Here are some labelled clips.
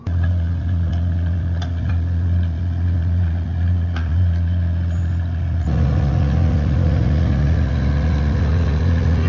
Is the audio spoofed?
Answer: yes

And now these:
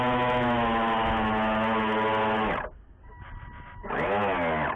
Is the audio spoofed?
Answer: no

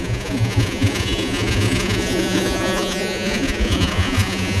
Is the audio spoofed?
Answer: yes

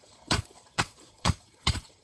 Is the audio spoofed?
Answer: yes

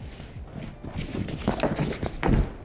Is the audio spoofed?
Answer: no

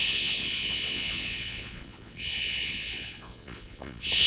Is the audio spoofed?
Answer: yes